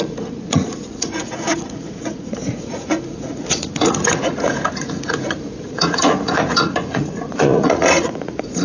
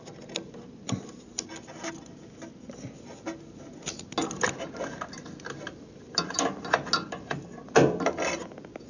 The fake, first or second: first